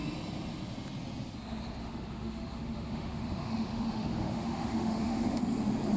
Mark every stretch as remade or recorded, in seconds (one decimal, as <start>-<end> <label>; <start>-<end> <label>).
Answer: 0.0-1.8 recorded; 1.8-5.4 remade; 5.4-6.0 recorded